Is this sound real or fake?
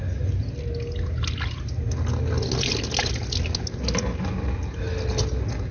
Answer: real